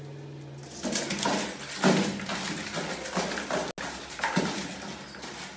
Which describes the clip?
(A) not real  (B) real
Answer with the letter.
B